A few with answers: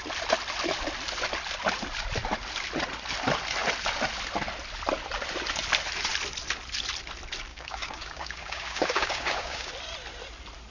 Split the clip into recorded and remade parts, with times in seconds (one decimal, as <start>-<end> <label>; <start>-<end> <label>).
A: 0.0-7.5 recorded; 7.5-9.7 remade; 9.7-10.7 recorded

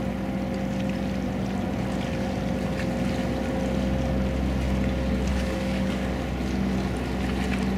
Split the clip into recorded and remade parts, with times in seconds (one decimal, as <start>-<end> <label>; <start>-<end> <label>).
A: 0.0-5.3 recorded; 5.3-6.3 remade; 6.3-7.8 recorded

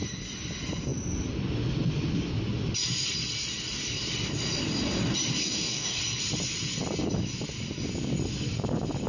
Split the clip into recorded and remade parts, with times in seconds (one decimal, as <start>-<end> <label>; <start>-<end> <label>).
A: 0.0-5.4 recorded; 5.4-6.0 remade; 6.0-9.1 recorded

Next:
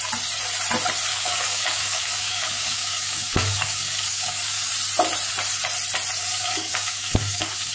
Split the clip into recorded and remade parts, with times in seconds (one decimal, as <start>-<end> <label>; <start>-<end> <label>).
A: 0.0-1.1 recorded; 1.1-4.7 remade; 4.7-6.2 recorded; 6.2-7.7 remade

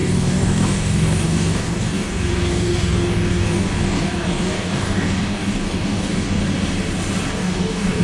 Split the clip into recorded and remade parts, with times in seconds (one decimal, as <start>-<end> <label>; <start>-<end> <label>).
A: 0.0-6.4 remade; 6.4-7.3 recorded; 7.3-8.0 remade

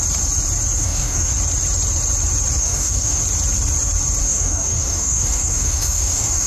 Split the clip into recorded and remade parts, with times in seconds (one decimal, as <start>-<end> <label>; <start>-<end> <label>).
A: 0.0-0.8 recorded; 0.8-1.3 remade; 1.3-2.6 recorded; 2.6-3.2 remade; 3.2-4.2 recorded; 4.2-6.5 remade

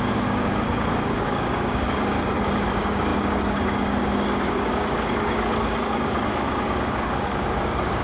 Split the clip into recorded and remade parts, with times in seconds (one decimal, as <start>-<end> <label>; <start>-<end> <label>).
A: 0.0-8.0 remade